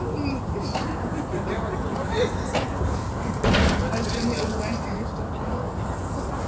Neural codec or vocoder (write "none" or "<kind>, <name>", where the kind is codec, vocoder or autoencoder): none